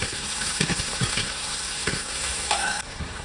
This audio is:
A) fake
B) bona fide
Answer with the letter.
A